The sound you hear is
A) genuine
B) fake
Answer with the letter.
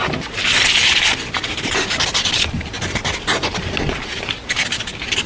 A